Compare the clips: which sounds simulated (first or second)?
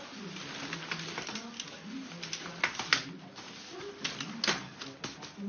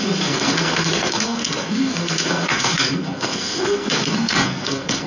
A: second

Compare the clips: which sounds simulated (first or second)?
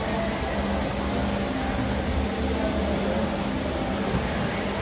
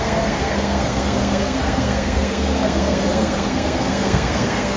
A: second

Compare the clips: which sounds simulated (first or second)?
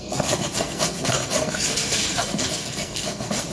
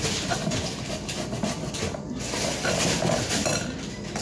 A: first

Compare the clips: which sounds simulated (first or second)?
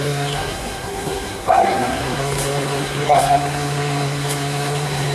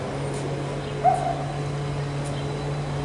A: first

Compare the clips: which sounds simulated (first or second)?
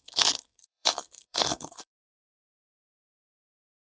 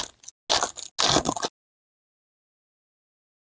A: first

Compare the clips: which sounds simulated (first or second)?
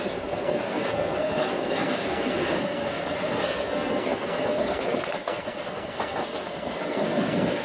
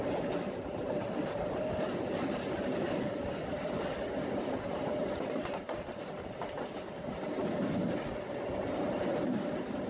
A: first